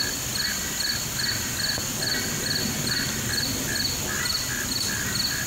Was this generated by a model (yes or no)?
no